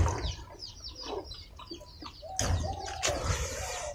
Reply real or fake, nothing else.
real